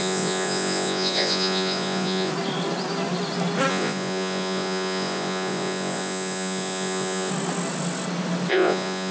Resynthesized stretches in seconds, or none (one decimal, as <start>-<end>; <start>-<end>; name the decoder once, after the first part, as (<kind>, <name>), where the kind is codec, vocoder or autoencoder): 0.0-2.3 (vocoder, Vocos); 3.7-7.3; 8.5-9.1